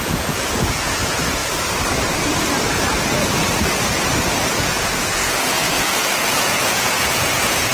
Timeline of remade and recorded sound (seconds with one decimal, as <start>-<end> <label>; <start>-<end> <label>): 0.0-1.4 remade; 1.4-4.6 recorded; 4.6-7.7 remade